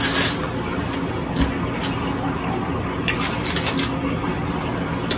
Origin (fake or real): real